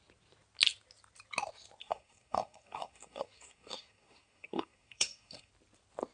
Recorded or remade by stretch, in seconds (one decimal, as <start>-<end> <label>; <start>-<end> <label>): 0.0-1.8 recorded; 1.8-5.5 remade; 5.5-6.1 recorded